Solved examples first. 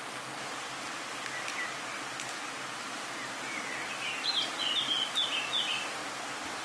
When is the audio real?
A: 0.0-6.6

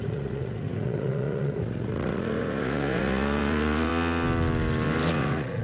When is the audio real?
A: 3.9-5.1

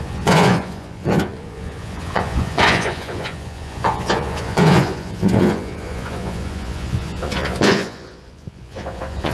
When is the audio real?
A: none

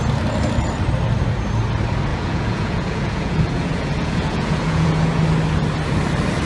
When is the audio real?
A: 0.0-2.1; 5.2-6.5

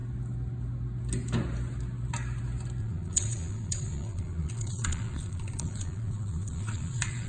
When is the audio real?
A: 0.0-2.8

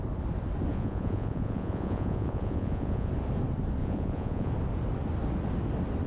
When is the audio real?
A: 0.0-0.7; 3.1-3.8; 4.5-6.1